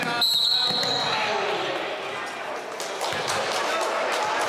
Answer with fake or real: real